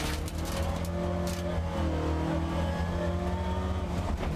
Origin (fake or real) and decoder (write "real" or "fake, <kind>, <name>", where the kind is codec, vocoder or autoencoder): real